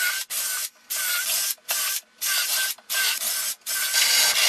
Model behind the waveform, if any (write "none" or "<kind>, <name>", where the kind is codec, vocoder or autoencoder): none